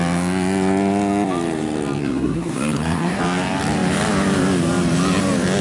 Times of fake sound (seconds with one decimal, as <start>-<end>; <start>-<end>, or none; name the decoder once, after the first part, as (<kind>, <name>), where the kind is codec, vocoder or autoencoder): 2.0-3.2 (codec, SNAC)